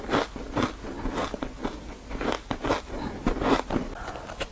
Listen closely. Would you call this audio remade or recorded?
recorded